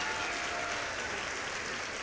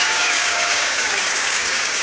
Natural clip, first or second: first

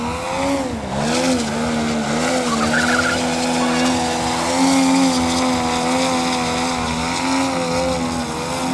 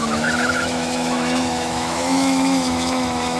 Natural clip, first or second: first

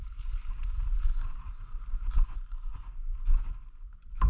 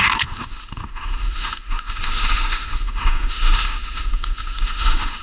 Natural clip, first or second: first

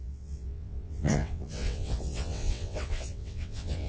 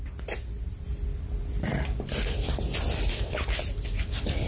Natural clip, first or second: second